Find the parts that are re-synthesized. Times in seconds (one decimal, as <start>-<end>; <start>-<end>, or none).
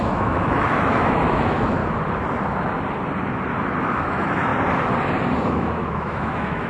0.0-1.8; 3.8-4.5; 5.5-6.7